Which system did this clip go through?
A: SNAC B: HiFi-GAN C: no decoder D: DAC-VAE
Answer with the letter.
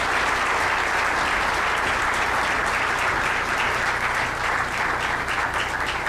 C